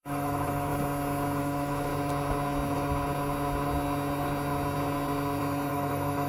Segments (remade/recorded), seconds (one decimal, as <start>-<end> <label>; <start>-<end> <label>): 0.0-0.7 remade; 0.7-1.4 recorded; 1.4-1.9 remade; 1.9-5.7 recorded; 5.7-6.3 remade